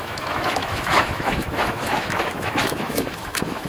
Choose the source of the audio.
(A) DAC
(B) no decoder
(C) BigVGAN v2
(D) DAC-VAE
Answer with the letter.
D